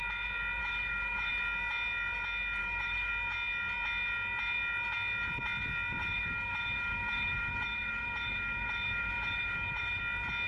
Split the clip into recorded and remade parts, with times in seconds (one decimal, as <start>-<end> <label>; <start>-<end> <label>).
0.0-0.6 recorded; 0.6-1.3 remade; 1.3-2.6 recorded; 2.6-3.1 remade; 3.1-6.0 recorded; 6.0-10.0 remade; 10.0-10.5 recorded